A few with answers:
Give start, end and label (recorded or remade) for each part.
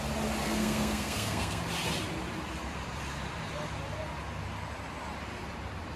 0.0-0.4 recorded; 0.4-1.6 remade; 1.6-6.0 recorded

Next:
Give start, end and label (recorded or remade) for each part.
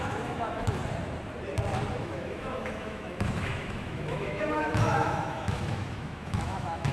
0.0-0.8 remade; 0.8-2.0 recorded; 2.0-6.9 remade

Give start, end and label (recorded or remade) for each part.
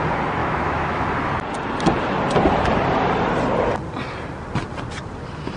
0.0-0.4 recorded; 0.4-1.1 remade; 1.1-5.6 recorded